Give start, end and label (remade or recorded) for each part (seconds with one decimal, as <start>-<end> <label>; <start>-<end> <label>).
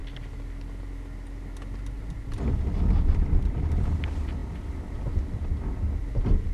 0.0-2.1 recorded; 2.1-6.5 remade